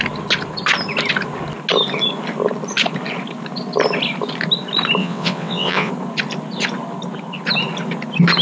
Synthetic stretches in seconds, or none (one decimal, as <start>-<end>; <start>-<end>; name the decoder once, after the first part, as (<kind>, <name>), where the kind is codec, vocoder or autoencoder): 5.0-5.9 (vocoder, WaveNeXt)